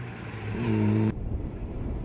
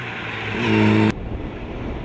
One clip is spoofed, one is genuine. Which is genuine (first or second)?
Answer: second